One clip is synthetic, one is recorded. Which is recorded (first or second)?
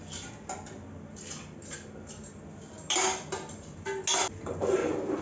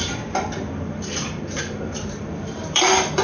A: first